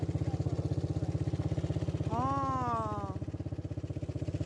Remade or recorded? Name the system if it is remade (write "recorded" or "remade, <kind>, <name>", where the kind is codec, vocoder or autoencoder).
recorded